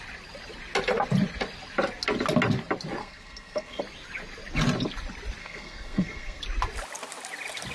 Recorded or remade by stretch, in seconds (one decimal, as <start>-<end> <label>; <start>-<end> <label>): 0.0-3.0 recorded; 3.0-3.8 remade; 3.8-5.4 recorded; 5.4-6.4 remade; 6.4-7.7 recorded